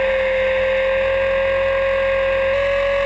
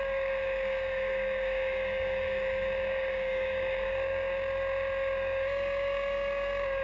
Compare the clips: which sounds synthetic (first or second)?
second